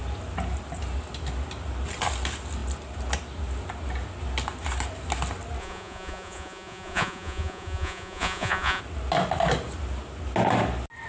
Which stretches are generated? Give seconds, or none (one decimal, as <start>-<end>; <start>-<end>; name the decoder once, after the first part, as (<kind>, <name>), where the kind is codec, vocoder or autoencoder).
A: 5.6-8.8 (vocoder, Vocos)